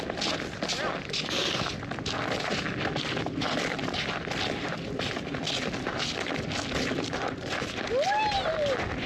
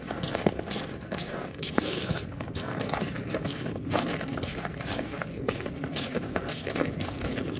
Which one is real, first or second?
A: first